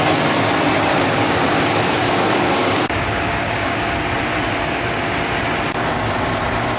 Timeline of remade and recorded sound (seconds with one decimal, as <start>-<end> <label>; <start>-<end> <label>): 0.0-0.9 recorded; 0.9-3.9 remade; 3.9-6.8 recorded